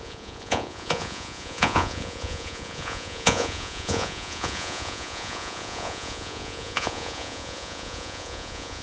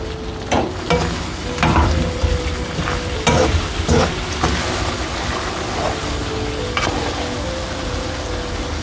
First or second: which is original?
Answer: second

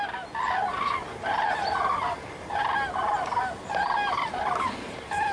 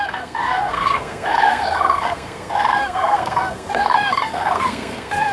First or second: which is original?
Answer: first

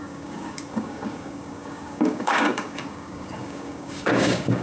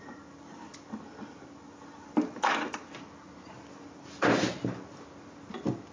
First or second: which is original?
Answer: second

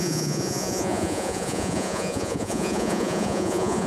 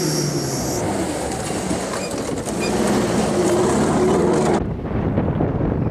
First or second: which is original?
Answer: second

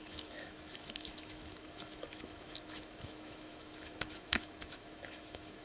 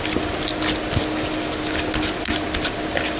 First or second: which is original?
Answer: second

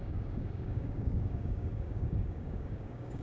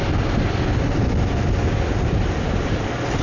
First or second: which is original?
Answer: second